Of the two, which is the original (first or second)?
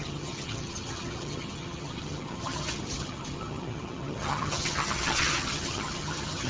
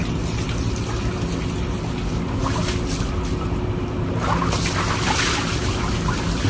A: second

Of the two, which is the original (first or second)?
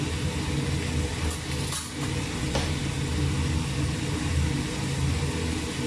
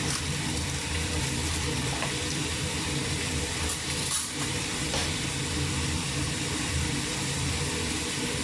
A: first